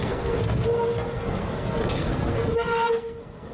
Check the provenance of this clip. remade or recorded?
remade